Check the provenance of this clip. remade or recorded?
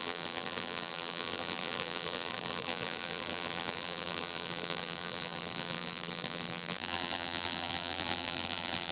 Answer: remade